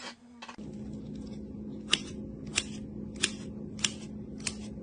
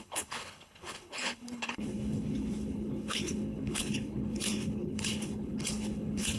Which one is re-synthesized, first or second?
second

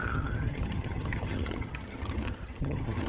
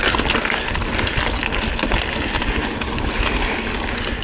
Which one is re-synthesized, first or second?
first